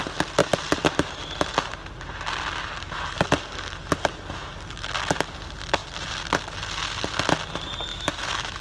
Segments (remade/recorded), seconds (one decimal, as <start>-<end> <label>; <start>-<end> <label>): 0.0-7.9 recorded; 7.9-8.6 remade